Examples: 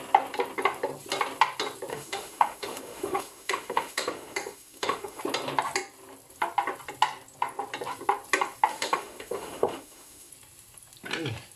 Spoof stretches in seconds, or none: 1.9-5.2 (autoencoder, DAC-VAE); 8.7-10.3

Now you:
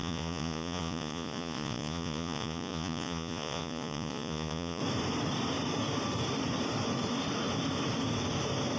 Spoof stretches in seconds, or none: 0.0-4.8 (vocoder, Vocos)

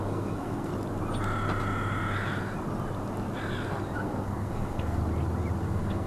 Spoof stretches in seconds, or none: 0.0-0.7 (codec, SNAC); 4.0-5.0; 5.6-6.1